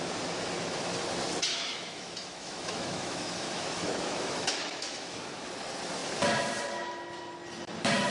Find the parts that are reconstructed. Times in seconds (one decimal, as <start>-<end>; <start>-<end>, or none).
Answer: 1.5-5.5